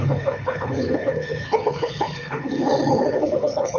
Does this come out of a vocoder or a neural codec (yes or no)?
yes